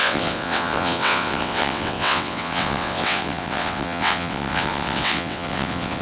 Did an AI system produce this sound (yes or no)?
yes